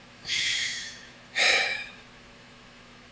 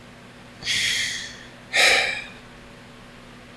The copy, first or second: first